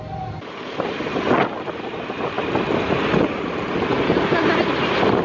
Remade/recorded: recorded